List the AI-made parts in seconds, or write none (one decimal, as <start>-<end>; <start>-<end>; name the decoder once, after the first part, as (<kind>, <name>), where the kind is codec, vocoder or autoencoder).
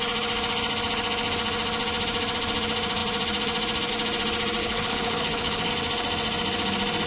4.6-5.7 (codec, HILCodec)